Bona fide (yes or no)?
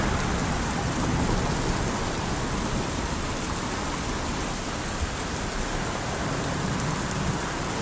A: yes